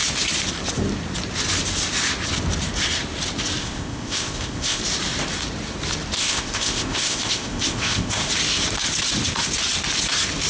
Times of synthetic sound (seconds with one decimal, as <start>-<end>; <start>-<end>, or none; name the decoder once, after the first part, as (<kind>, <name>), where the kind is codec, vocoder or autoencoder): 3.6-4.8 (codec, ZipCodec); 6.2-8.3